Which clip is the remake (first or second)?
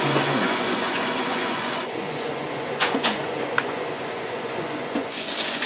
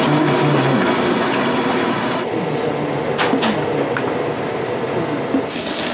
first